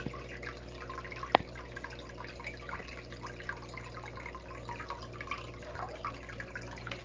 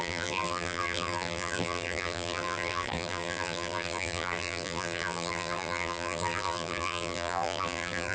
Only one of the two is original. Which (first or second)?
first